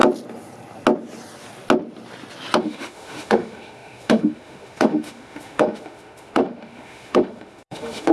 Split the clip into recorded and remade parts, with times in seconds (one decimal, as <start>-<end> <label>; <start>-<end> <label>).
0.0-2.6 recorded; 2.6-8.1 remade